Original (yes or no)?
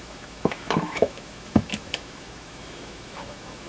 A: no